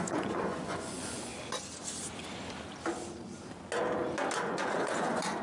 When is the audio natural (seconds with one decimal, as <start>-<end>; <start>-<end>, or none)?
1.3-4.4

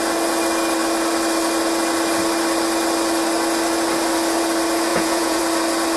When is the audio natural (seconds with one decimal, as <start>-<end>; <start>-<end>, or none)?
0.0-4.9; 5.4-6.0

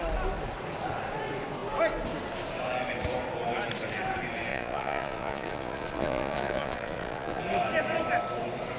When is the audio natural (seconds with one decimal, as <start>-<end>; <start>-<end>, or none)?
0.0-4.5; 7.4-8.8